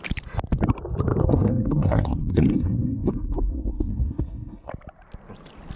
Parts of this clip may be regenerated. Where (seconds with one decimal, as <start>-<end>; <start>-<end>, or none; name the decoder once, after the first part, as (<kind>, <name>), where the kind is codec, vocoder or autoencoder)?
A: 1.2-4.7 (codec, SNAC)